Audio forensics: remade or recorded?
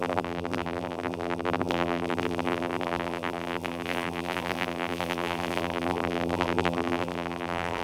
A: remade